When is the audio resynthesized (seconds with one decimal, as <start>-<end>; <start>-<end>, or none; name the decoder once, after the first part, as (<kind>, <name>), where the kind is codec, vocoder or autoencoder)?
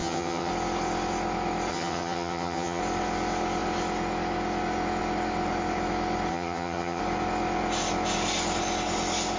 0.0-0.5 (vocoder, HiFi-GAN); 1.7-2.8; 6.3-7.0